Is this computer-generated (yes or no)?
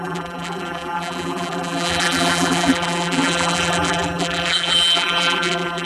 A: yes